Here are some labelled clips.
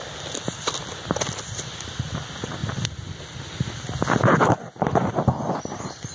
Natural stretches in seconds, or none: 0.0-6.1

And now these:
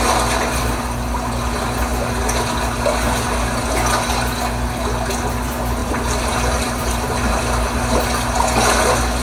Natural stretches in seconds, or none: 0.0-5.8; 7.4-9.2

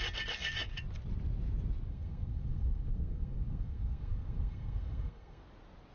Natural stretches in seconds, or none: 0.0-1.9; 5.4-5.9